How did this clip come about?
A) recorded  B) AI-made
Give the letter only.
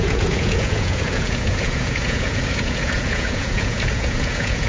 B